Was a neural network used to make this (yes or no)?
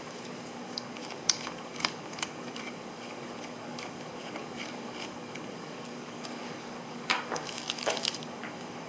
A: yes